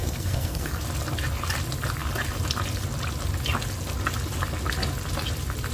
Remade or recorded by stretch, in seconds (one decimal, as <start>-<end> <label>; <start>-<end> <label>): 0.0-0.8 remade; 0.8-5.7 recorded